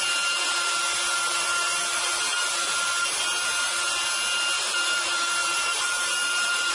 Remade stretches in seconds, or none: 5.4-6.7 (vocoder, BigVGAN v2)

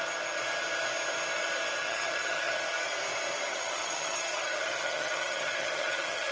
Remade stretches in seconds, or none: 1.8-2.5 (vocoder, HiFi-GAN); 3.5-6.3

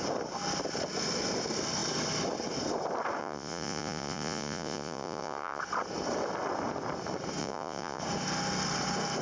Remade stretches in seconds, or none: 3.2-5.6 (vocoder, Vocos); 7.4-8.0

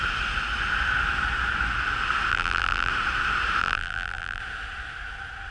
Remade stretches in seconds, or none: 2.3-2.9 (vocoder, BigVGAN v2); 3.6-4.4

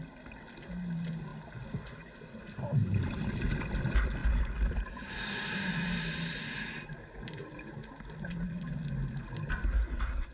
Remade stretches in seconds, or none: none

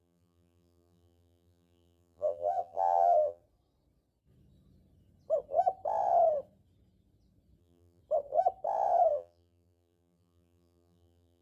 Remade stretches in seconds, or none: 0.0-3.4 (vocoder, BigVGAN v2); 7.6-8.0; 9.1-11.4